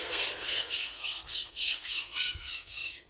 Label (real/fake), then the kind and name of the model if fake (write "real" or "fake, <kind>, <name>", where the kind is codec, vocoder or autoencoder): fake, codec, SNAC